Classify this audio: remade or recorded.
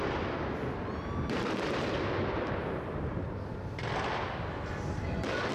recorded